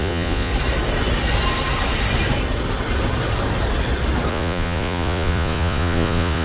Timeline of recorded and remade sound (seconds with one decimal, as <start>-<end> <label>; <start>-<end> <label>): 0.0-0.5 remade; 0.5-4.3 recorded; 4.3-6.4 remade

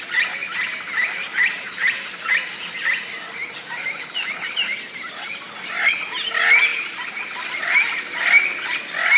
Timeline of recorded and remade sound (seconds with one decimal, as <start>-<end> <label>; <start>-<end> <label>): 0.0-0.4 recorded; 0.4-2.4 remade; 2.4-3.4 recorded; 3.4-4.0 remade; 4.0-6.7 recorded; 6.7-7.5 remade; 7.5-9.2 recorded

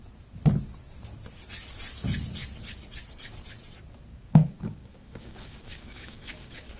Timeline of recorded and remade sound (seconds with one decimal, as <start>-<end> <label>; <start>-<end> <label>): 0.0-4.1 recorded; 4.1-6.8 remade

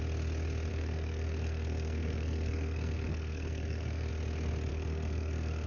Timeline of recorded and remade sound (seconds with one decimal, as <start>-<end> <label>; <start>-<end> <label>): 0.0-0.7 recorded; 0.7-4.1 remade; 4.1-4.7 recorded; 4.7-5.7 remade

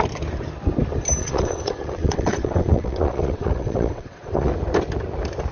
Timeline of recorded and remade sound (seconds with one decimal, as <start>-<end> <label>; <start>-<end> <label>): 0.0-1.2 recorded; 1.2-4.5 remade; 4.5-5.5 recorded